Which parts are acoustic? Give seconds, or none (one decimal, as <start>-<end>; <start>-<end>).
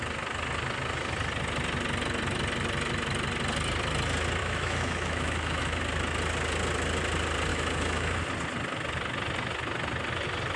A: 0.0-4.4; 5.8-7.5; 8.2-10.6